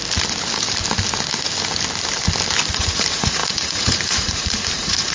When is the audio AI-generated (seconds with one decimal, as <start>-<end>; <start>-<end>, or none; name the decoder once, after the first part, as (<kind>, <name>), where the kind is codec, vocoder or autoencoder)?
2.7-5.1 (vocoder, Vocos)